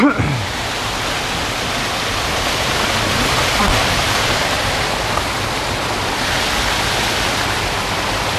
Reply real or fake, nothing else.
real